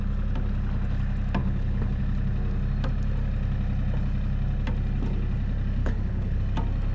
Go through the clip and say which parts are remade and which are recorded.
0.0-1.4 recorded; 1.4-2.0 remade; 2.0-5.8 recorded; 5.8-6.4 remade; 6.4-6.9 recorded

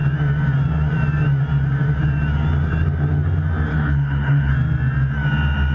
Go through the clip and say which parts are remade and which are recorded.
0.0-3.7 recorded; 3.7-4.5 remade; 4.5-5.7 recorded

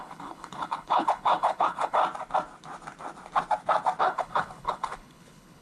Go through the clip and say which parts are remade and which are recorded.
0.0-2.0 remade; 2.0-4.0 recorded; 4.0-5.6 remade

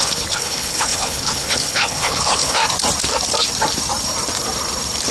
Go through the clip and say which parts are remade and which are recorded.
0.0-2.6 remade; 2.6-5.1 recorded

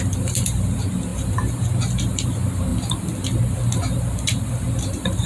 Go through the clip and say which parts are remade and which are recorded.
0.0-5.3 recorded

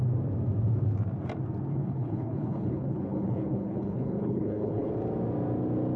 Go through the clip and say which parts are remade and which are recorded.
0.0-1.7 recorded; 1.7-4.9 remade; 4.9-6.0 recorded

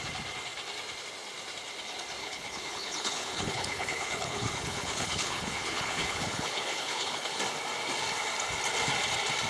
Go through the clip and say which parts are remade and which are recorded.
0.0-2.2 recorded; 2.2-7.4 remade; 7.4-9.5 recorded